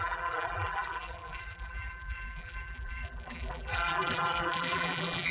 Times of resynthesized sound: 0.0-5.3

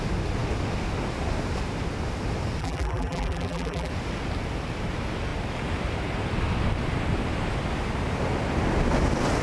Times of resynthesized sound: 2.6-3.9

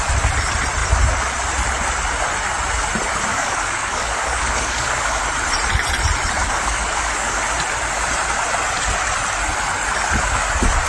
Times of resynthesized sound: 3.3-5.2; 6.4-7.4

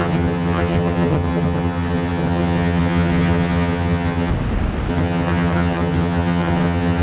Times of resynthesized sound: 0.0-4.3; 4.9-7.0

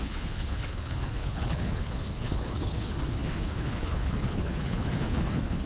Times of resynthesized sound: 0.0-5.7

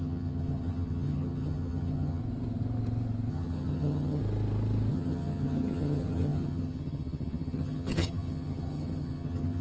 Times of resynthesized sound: 0.0-2.2; 3.3-4.2; 4.9-9.6